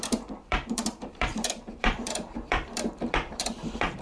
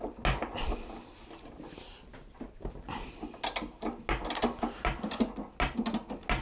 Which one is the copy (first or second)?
first